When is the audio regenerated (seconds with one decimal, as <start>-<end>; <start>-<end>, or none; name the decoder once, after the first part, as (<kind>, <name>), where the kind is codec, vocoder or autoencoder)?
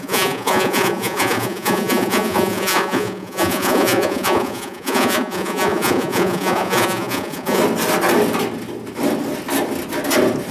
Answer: 0.0-7.6 (vocoder, Vocos)